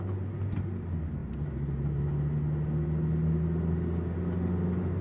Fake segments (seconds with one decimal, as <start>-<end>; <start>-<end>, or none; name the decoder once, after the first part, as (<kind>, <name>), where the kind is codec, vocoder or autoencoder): none